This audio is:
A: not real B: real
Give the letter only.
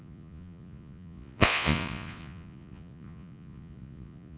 A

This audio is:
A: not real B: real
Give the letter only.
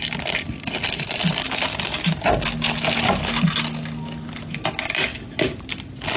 B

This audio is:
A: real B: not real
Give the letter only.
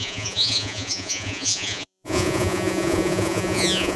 B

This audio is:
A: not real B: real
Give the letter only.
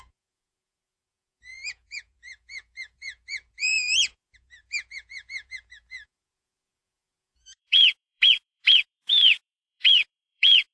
A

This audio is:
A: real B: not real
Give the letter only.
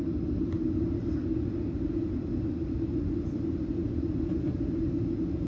A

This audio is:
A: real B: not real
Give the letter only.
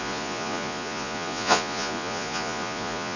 B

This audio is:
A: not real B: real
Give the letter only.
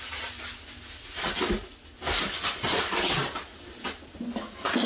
B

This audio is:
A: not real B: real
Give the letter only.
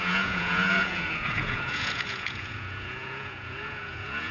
A